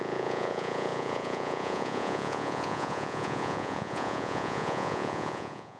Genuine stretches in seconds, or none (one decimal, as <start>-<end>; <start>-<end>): none